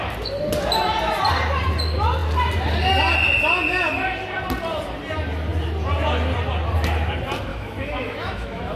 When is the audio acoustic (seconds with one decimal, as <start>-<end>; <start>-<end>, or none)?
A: 0.0-7.5